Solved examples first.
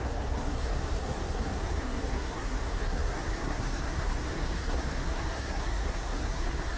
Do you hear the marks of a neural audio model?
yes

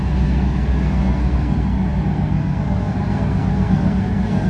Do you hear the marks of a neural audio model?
yes